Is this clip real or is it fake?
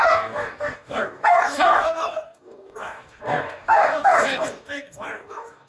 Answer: fake